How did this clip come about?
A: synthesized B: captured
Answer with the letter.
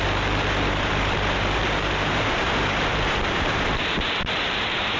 A